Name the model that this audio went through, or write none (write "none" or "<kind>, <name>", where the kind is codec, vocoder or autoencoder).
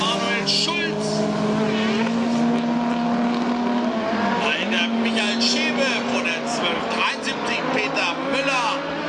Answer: none